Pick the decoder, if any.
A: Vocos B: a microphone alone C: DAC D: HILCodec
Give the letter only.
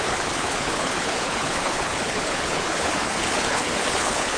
D